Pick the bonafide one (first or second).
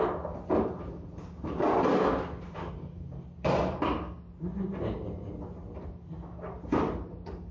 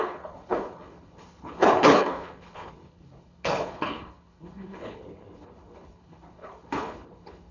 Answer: first